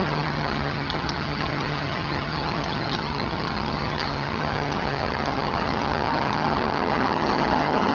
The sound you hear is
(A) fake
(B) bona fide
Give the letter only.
A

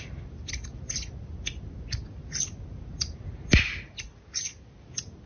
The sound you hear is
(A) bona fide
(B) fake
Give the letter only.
A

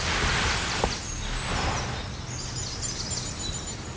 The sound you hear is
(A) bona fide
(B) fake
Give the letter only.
A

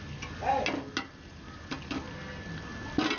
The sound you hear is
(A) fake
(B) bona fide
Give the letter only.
B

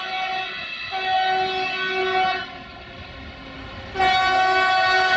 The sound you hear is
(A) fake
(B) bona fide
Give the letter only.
B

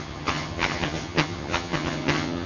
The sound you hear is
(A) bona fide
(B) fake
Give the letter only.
B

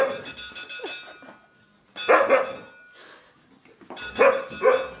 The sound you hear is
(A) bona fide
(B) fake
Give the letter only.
A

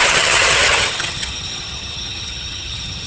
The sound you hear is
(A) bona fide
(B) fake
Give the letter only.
B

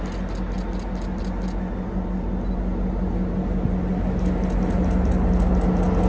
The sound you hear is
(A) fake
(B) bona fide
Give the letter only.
B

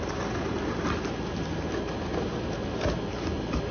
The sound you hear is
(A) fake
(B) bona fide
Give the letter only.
B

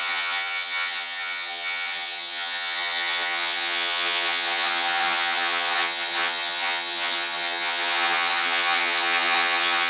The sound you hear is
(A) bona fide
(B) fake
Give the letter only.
B